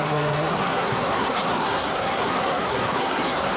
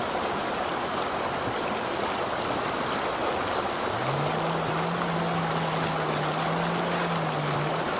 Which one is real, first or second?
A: second